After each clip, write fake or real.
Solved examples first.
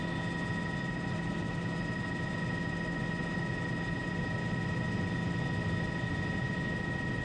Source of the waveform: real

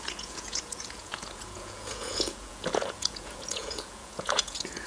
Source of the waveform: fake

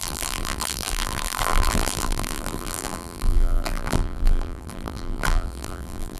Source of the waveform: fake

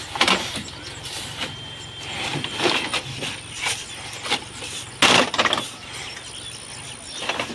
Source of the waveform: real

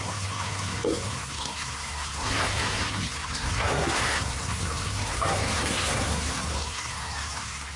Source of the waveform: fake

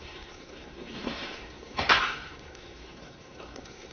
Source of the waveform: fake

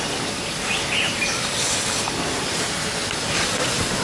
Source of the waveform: real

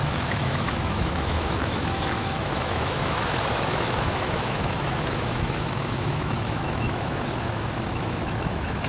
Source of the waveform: fake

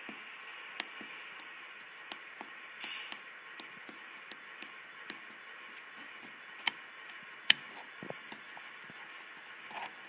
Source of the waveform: real